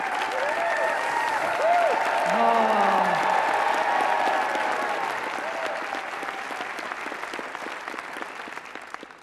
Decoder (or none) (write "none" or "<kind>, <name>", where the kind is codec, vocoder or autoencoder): none